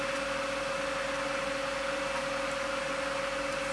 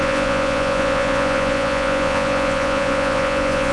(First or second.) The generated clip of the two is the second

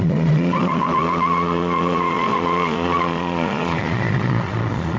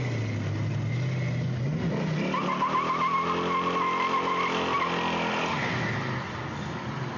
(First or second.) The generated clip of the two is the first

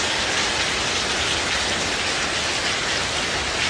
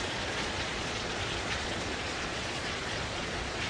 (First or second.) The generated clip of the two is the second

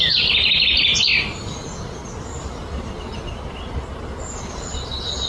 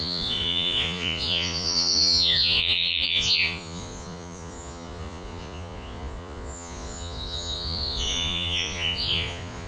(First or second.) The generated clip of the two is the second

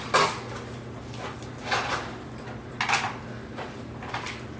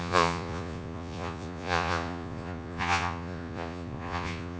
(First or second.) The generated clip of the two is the second